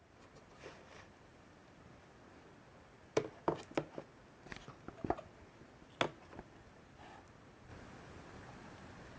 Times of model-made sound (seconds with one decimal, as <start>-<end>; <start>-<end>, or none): 0.0-1.6; 6.3-9.2